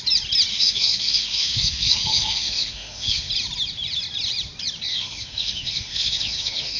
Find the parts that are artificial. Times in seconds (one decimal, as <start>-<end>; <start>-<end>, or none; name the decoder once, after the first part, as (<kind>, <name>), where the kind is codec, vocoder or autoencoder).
0.5-3.3 (autoencoder, DAC-VAE); 4.9-6.8